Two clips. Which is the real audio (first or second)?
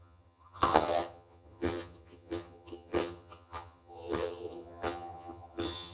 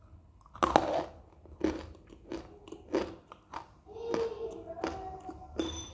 second